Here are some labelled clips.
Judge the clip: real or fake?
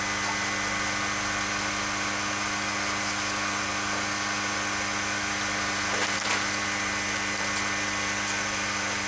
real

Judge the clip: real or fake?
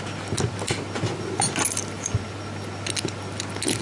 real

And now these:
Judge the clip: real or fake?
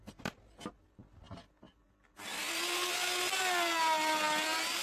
real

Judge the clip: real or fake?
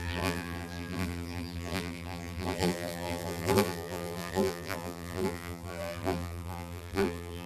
fake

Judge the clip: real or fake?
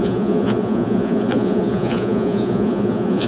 fake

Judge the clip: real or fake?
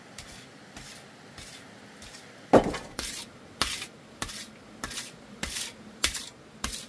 real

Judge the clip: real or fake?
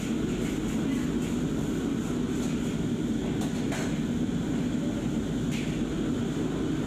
real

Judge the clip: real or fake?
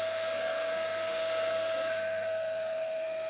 fake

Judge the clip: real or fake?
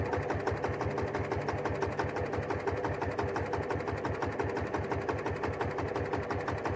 real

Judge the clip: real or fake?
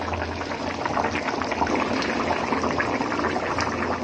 real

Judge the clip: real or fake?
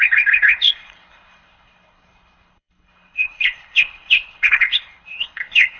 fake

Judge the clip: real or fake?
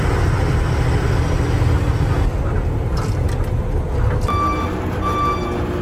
real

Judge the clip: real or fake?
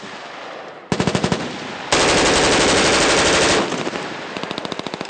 real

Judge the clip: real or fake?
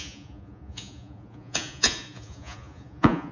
fake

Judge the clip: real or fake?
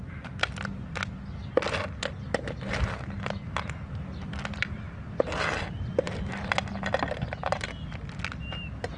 real